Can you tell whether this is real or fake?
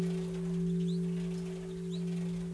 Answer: real